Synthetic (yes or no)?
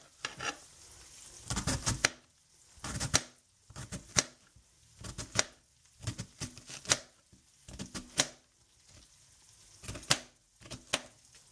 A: no